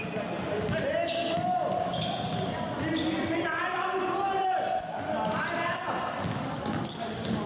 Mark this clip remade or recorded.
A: recorded